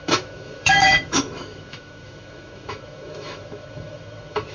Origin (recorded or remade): remade